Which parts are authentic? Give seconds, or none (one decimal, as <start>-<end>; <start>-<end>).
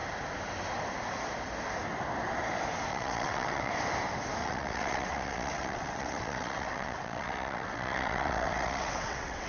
0.0-2.9; 3.7-4.4